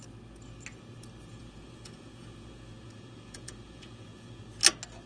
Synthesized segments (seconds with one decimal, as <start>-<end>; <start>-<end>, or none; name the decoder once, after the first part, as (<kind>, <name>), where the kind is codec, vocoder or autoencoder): 1.3-4.4 (vocoder, Vocos)